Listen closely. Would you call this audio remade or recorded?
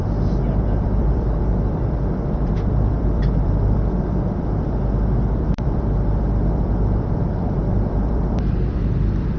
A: remade